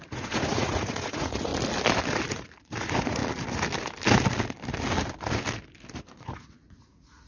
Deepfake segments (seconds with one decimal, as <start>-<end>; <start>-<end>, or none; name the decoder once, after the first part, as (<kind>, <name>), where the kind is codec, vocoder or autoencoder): 0.0-1.5 (vocoder, Vocos); 2.3-3.2; 6.0-7.3